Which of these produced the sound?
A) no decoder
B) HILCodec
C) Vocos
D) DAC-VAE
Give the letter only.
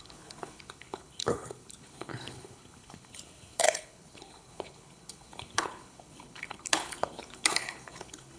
B